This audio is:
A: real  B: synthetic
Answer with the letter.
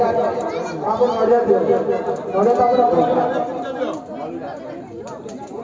A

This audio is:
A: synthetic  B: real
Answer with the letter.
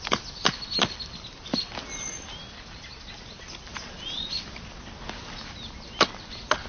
B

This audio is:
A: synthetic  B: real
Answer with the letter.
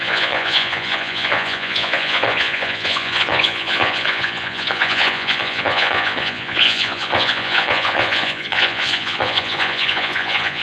A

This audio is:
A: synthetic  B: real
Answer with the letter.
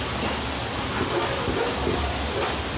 B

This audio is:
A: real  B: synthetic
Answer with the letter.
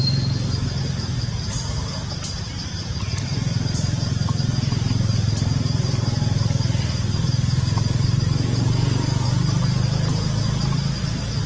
A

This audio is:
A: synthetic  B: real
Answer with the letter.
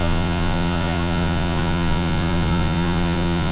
A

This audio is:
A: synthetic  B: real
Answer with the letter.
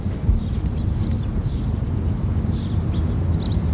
B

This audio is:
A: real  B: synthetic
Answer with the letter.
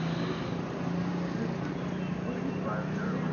A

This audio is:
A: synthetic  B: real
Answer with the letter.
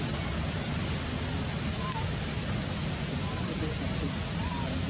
B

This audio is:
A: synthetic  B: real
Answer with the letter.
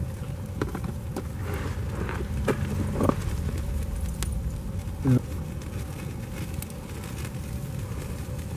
B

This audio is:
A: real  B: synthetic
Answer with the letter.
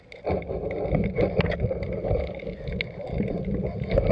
A